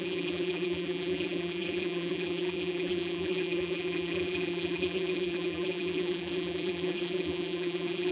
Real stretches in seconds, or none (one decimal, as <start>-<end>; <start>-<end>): none